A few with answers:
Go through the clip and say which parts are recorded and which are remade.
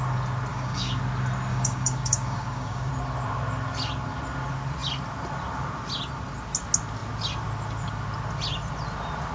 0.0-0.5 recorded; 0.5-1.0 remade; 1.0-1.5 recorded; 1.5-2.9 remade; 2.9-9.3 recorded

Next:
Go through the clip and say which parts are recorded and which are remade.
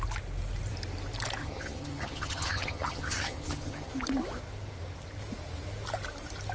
0.0-1.4 recorded; 1.4-3.9 remade; 3.9-6.5 recorded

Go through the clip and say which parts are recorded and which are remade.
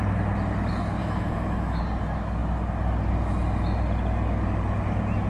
0.0-1.0 recorded; 1.0-1.8 remade; 1.8-5.3 recorded